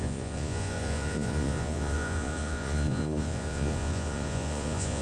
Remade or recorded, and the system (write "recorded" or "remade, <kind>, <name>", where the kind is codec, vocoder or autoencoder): remade, vocoder, Vocos